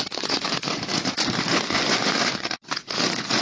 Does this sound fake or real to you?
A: fake